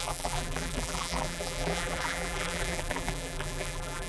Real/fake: fake